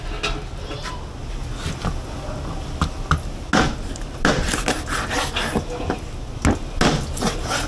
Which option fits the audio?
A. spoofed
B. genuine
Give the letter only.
B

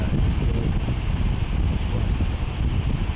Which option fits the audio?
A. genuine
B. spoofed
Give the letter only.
A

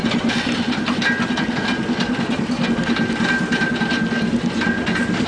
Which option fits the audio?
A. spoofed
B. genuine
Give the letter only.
B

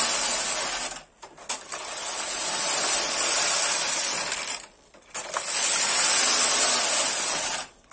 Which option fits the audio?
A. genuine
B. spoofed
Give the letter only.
A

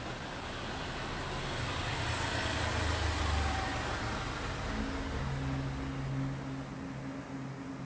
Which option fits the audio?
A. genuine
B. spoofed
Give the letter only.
A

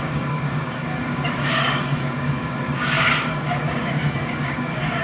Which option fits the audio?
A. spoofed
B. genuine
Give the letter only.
A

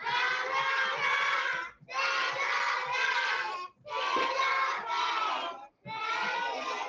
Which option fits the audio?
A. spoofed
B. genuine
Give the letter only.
B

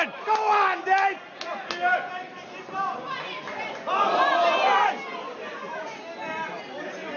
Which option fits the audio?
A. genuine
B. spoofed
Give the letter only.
A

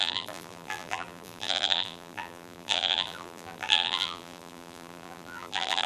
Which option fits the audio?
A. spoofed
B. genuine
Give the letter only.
A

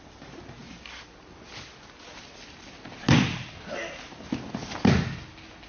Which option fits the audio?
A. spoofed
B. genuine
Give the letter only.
B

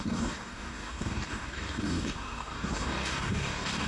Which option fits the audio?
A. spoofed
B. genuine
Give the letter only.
A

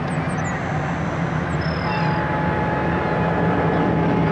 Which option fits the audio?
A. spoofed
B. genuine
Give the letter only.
B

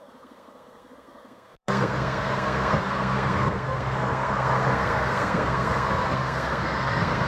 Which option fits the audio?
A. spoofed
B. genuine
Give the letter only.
A